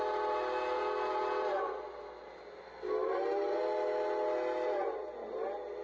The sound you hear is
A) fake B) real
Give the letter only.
B